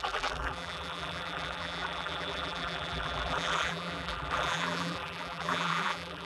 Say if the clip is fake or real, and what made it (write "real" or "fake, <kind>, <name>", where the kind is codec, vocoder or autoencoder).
fake, vocoder, BigVGAN v2